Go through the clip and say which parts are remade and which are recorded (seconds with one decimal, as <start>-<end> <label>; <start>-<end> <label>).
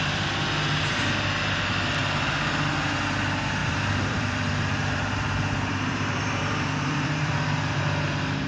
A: 0.0-3.6 recorded; 3.6-7.8 remade; 7.8-8.5 recorded